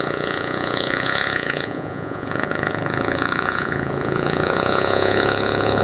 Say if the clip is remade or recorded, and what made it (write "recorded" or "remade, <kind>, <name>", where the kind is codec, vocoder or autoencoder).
remade, vocoder, Vocos